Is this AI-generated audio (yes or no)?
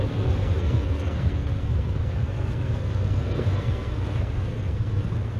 yes